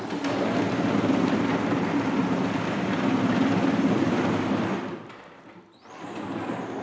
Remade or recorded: recorded